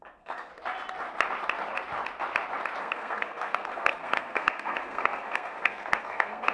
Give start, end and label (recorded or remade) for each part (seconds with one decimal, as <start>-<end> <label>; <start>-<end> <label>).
0.0-0.5 remade; 0.5-2.8 recorded; 2.8-6.5 remade